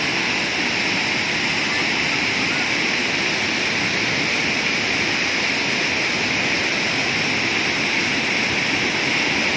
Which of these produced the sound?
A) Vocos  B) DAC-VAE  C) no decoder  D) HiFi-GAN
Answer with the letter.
C